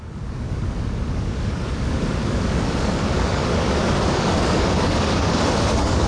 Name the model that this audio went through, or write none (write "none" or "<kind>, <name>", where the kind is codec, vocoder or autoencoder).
codec, DAC